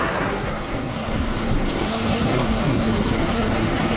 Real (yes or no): no